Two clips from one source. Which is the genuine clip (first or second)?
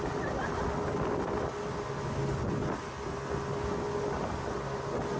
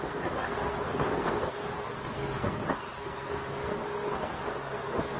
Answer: first